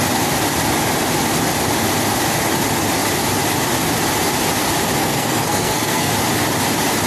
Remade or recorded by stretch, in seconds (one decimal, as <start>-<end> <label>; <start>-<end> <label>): 0.0-5.0 recorded; 5.0-6.1 remade; 6.1-7.1 recorded